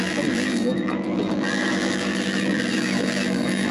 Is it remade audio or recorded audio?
remade